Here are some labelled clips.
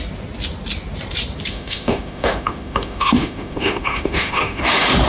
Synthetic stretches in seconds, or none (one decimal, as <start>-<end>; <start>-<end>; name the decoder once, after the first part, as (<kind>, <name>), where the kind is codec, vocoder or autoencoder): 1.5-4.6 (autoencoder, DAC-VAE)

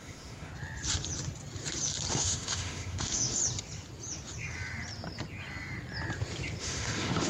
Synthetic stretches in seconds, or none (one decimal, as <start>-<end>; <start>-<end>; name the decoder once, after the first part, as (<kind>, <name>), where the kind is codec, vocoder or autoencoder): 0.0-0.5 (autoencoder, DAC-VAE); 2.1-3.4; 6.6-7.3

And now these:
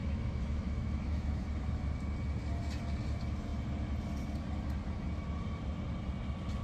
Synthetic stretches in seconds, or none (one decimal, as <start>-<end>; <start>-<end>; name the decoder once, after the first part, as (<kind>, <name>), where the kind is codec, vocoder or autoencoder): 0.0-1.8 (autoencoder, DAC-VAE)

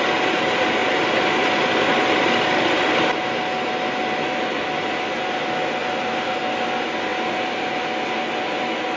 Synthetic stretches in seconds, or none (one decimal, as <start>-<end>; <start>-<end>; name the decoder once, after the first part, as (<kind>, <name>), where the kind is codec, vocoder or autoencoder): none